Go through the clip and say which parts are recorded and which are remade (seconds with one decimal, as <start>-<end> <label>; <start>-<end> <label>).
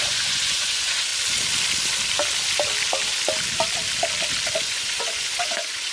0.0-1.1 remade; 1.1-4.6 recorded; 4.6-5.9 remade